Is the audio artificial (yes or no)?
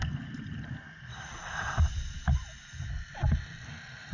no